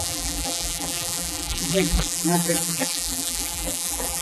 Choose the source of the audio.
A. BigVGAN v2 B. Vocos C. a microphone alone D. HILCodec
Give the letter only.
A